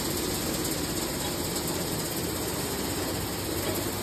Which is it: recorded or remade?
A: recorded